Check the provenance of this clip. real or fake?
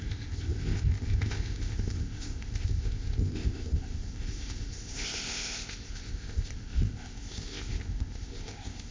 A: fake